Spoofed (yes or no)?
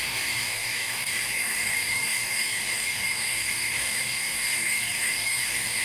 yes